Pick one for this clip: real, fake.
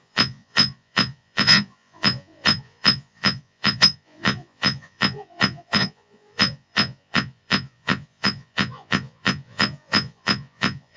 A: fake